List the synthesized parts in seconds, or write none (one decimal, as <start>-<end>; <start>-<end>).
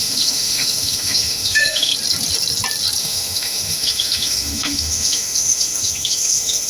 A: 0.0-1.9; 3.0-6.7